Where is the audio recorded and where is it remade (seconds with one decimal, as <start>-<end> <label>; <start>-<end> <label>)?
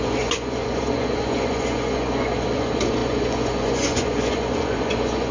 0.0-5.3 remade